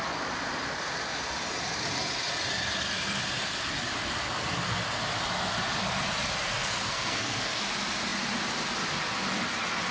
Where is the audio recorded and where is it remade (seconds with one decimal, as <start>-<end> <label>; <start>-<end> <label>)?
0.0-6.6 recorded; 6.6-7.6 remade; 7.6-9.9 recorded